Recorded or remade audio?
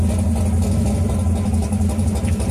recorded